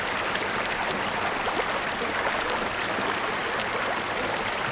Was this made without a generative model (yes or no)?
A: yes